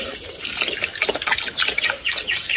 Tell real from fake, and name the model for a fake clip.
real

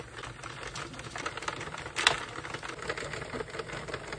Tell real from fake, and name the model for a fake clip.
real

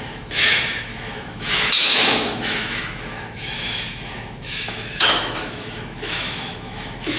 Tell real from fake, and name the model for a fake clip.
fake, autoencoder, DAC-VAE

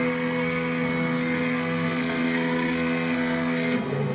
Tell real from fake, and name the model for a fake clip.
fake, codec, SNAC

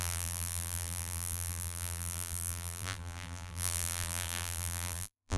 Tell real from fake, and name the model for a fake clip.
fake, vocoder, BigVGAN v2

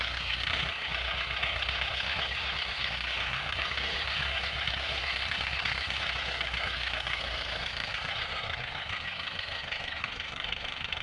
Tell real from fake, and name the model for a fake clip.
fake, codec, SNAC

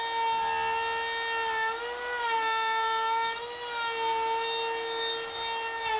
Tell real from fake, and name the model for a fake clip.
real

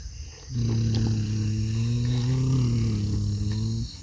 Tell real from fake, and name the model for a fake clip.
real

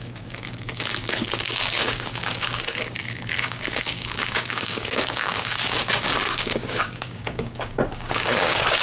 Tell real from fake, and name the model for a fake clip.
fake, codec, DAC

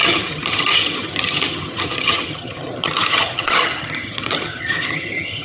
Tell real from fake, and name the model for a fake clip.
fake, vocoder, HiFi-GAN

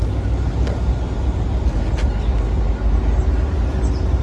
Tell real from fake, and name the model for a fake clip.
real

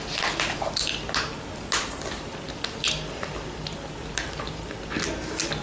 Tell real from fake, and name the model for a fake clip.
real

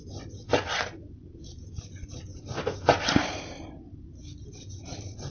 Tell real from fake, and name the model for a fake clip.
real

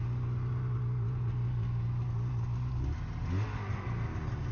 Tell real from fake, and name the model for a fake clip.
real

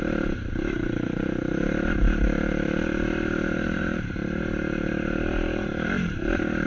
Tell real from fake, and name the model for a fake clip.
fake, vocoder, BigVGAN v2